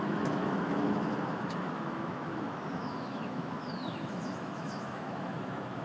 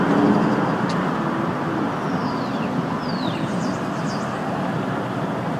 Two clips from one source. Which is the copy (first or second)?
first